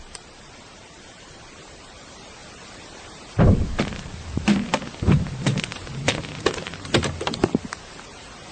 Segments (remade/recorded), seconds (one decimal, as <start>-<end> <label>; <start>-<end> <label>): 0.0-4.7 remade; 4.7-5.3 recorded; 5.3-5.7 remade; 5.7-7.6 recorded; 7.6-8.5 remade